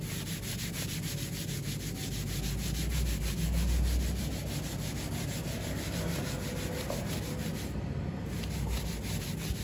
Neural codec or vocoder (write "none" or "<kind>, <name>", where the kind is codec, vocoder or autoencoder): none